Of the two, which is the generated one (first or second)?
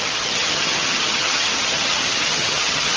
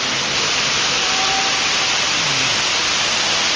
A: first